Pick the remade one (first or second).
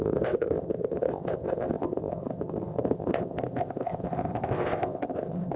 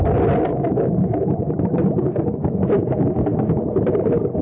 first